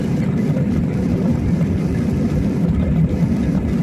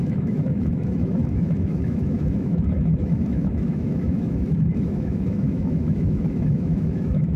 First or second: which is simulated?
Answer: second